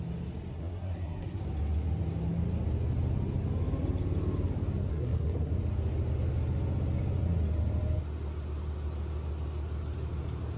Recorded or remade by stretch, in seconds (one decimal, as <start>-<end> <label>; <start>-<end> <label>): 0.0-0.5 recorded; 0.5-1.4 remade; 1.4-4.9 recorded; 4.9-5.5 remade; 5.5-10.6 recorded